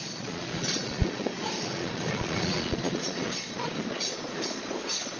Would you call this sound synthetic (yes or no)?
yes